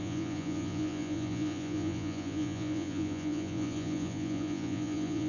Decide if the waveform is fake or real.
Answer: fake